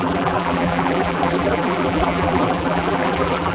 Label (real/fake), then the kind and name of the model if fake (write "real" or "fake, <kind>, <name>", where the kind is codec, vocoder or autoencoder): fake, vocoder, BigVGAN v2